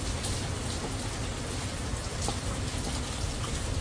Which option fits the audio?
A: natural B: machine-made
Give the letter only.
A